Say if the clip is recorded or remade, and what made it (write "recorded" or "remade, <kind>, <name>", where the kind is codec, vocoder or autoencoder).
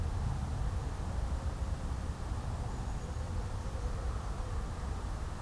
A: recorded